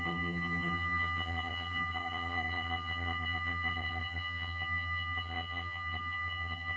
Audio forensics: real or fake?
fake